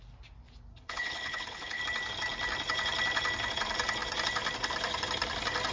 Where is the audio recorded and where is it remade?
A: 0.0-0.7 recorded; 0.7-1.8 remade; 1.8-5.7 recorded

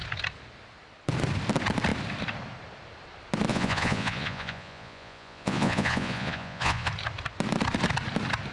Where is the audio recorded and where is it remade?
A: 0.0-3.5 recorded; 3.5-6.9 remade; 6.9-8.5 recorded